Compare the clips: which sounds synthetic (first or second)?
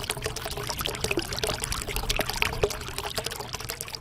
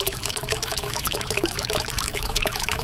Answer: second